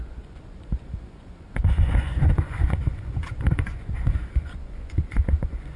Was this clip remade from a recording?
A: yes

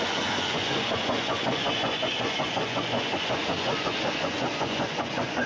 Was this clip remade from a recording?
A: yes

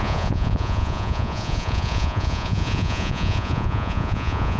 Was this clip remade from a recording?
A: yes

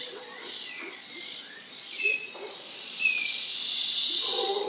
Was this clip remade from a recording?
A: yes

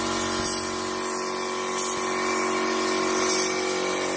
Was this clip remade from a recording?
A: no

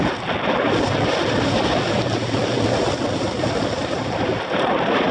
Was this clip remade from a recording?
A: no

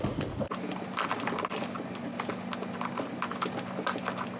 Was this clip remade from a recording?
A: no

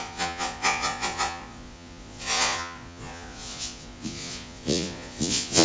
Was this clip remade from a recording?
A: yes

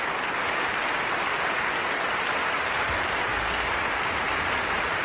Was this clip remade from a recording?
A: no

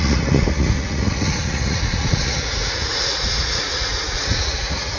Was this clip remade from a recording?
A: yes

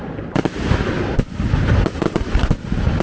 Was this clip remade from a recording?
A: no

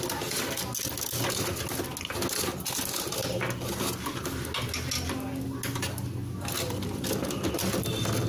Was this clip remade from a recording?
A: no